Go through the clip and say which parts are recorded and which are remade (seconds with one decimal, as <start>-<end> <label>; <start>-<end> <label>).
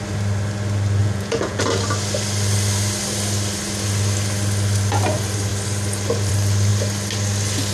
0.0-1.0 recorded; 1.0-1.6 remade; 1.6-7.7 recorded